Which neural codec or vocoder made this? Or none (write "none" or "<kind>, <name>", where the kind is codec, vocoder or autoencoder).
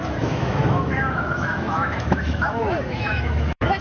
autoencoder, DAC-VAE